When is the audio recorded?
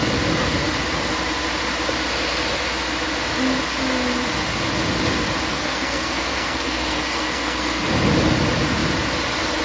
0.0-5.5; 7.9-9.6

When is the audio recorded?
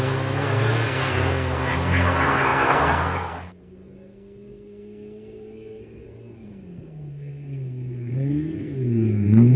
none